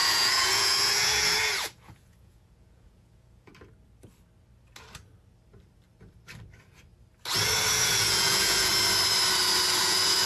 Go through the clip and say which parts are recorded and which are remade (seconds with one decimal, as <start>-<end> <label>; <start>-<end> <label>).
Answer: 0.0-3.5 remade; 3.5-7.7 recorded; 7.7-8.7 remade; 8.7-9.8 recorded; 9.8-10.3 remade

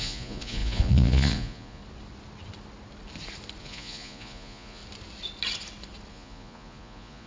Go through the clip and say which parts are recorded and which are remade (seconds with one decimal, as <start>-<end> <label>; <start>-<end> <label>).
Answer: 0.0-1.8 remade; 1.8-3.6 recorded; 3.6-4.8 remade; 4.8-6.1 recorded; 6.1-7.3 remade

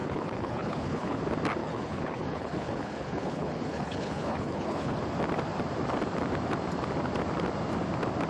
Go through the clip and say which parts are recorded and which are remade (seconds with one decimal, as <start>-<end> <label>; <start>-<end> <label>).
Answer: 0.0-1.2 remade; 1.2-1.6 recorded; 1.6-5.0 remade; 5.0-8.3 recorded

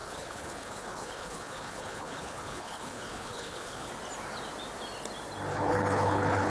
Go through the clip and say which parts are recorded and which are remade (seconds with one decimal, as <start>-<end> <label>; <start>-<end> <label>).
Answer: 0.0-3.9 remade; 3.9-5.5 recorded; 5.5-6.5 remade

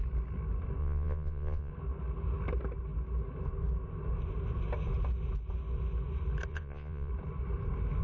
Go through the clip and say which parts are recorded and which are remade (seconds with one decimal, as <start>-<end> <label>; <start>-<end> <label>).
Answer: 0.0-0.8 recorded; 0.8-1.7 remade; 1.7-6.5 recorded; 6.5-7.1 remade; 7.1-8.0 recorded

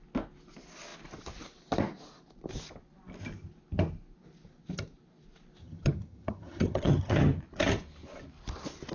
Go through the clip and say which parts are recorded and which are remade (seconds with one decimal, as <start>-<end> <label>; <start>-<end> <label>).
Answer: 0.0-5.6 recorded; 5.6-7.4 remade; 7.4-8.9 recorded

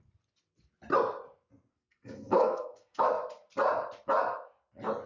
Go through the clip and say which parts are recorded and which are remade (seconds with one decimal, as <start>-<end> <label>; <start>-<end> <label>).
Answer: 0.0-1.7 recorded; 1.7-3.0 remade; 3.0-5.1 recorded